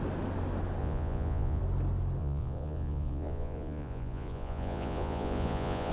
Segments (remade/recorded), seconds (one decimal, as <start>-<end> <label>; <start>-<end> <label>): 0.0-0.8 recorded; 0.8-1.6 remade; 1.6-2.2 recorded; 2.2-5.9 remade